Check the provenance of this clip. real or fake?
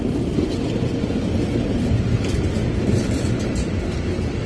real